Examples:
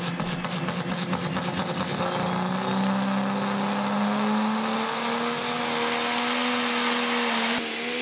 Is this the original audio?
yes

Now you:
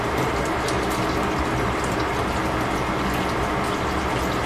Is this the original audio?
yes